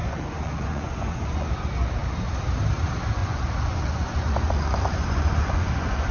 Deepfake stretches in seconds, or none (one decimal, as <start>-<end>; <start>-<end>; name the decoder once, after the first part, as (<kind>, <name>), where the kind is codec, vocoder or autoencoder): 0.0-1.5 (vocoder, Vocos); 3.2-6.1